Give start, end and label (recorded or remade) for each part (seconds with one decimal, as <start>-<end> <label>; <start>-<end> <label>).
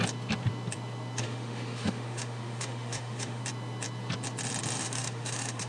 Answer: 0.0-1.2 recorded; 1.2-3.4 remade; 3.4-4.8 recorded; 4.8-5.7 remade